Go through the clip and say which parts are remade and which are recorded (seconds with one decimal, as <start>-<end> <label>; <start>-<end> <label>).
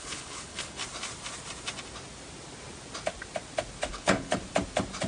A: 0.0-0.8 remade; 0.8-3.9 recorded; 3.9-4.4 remade; 4.4-5.1 recorded